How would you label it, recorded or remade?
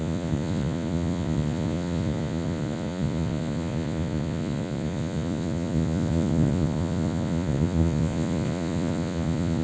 remade